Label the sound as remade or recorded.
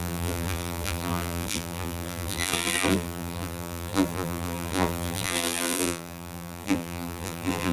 remade